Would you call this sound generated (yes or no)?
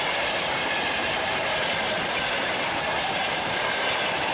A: yes